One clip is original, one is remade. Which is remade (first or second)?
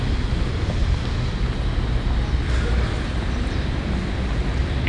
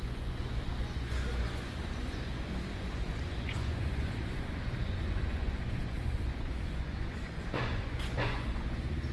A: second